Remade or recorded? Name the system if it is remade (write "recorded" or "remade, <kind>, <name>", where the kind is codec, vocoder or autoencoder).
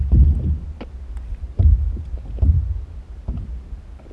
recorded